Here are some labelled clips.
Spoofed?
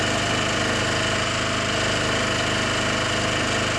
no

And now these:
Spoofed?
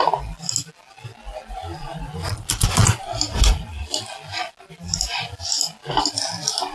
no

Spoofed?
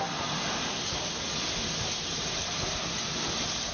no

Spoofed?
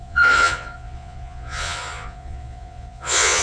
yes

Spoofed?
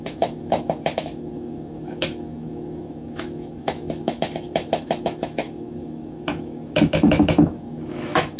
yes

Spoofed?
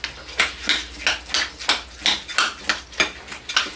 no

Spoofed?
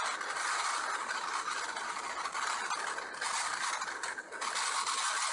no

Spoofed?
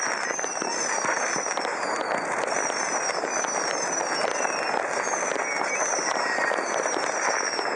no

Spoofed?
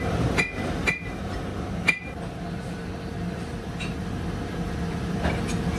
no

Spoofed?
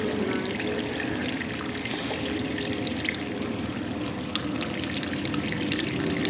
no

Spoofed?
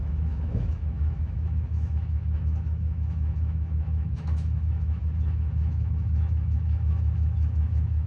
yes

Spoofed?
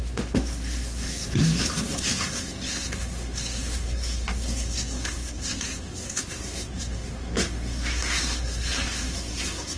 yes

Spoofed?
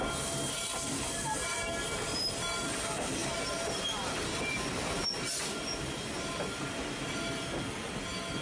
no